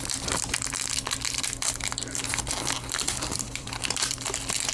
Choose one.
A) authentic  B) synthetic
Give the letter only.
B